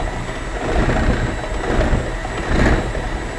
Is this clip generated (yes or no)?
no